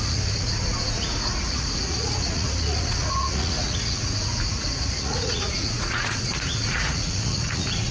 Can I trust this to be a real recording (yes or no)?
no